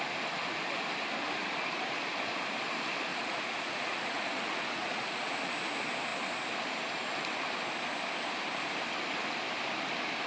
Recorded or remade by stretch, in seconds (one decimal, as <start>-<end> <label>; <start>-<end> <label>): 0.0-3.1 recorded; 3.1-5.5 remade; 5.5-10.3 recorded